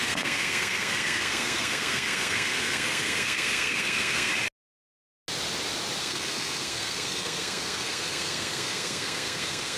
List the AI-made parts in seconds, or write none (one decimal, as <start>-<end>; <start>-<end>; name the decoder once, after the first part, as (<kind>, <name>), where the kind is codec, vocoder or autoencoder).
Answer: 0.0-4.3 (codec, SNAC); 6.0-9.8